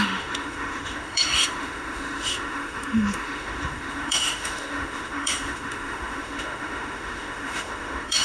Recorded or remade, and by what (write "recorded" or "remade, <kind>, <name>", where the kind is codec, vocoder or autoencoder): remade, autoencoder, DAC-VAE